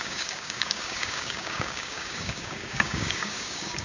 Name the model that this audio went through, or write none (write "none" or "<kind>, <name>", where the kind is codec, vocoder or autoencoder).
codec, DAC